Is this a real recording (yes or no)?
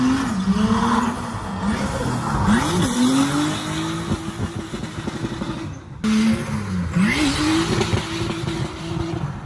yes